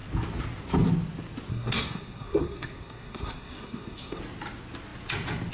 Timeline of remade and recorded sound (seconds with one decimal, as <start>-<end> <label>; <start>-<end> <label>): 0.0-1.5 recorded; 1.5-4.2 remade; 4.2-5.5 recorded

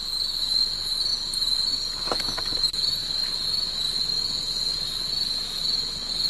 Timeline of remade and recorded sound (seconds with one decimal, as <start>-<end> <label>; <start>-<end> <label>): 0.0-6.3 recorded

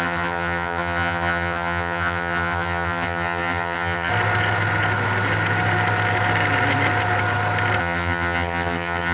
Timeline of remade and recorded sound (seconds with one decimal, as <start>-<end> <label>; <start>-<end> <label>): 0.0-4.1 remade; 4.1-7.8 recorded; 7.8-9.1 remade

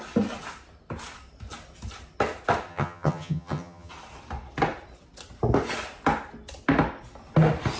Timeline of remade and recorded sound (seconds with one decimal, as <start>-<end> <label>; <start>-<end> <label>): 0.0-2.7 recorded; 2.7-3.9 remade; 3.9-7.8 recorded

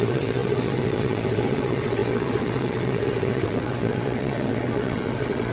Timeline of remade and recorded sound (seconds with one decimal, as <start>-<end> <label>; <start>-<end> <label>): 0.0-5.5 remade

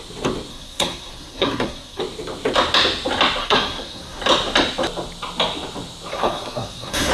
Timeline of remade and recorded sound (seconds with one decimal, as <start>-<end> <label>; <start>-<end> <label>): 0.0-0.5 recorded; 0.5-2.0 remade; 2.0-3.4 recorded; 3.4-4.2 remade; 4.2-6.1 recorded; 6.1-7.1 remade

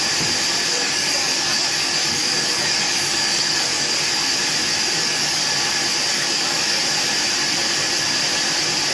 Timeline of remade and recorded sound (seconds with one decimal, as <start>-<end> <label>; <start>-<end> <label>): 0.0-0.7 recorded; 0.7-3.9 remade; 3.9-5.0 recorded; 5.0-5.5 remade; 5.5-6.1 recorded; 6.1-6.8 remade; 6.8-8.9 recorded